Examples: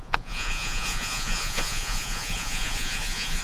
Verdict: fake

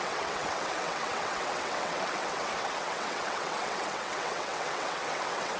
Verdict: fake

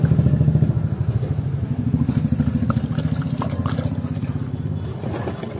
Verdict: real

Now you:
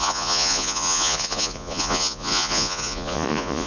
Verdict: fake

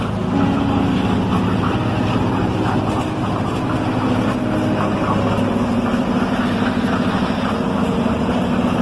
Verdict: real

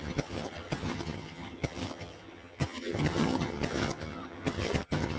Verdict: fake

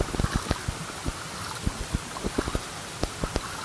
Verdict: real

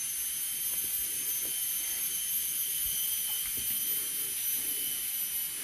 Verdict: real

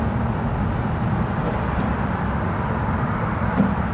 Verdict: real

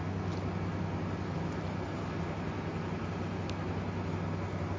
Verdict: real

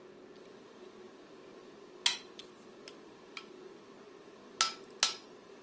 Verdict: real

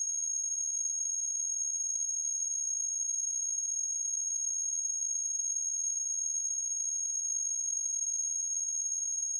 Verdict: fake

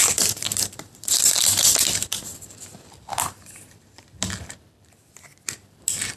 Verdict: fake